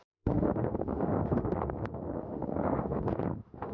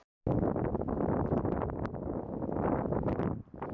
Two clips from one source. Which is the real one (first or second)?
second